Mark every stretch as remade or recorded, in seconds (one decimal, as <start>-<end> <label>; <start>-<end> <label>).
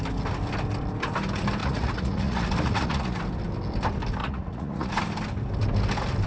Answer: 0.0-1.6 recorded; 1.6-3.2 remade; 3.2-4.2 recorded; 4.2-5.0 remade; 5.0-6.3 recorded